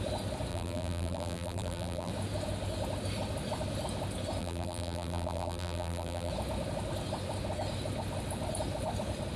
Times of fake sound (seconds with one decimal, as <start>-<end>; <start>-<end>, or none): 0.5-2.1; 4.4-6.3